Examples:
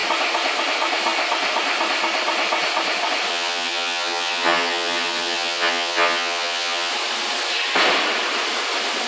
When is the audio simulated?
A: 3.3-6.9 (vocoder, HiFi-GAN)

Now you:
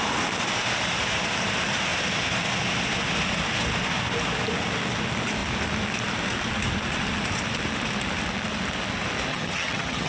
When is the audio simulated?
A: 9.3-10.1 (vocoder, HiFi-GAN)

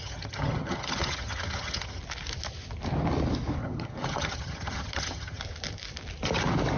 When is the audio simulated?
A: 0.0-2.0 (vocoder, HiFi-GAN); 3.6-5.4

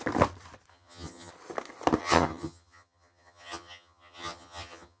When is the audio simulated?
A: 0.7-1.3 (vocoder, HiFi-GAN); 2.0-5.0

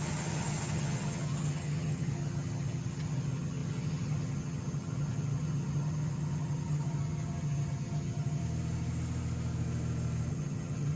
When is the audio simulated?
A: 0.0-8.4 (vocoder, HiFi-GAN); 10.3-11.0

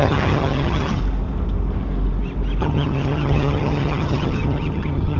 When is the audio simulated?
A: 0.0-1.0 (vocoder, HiFi-GAN); 2.6-5.2

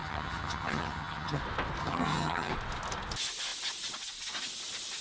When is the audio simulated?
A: 0.0-1.4 (vocoder, HiFi-GAN); 1.8-2.5

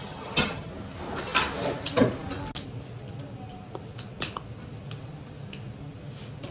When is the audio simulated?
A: 0.0-0.7 (vocoder, HiFi-GAN)